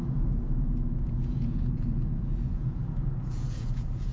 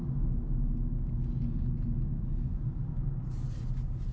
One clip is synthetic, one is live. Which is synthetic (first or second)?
first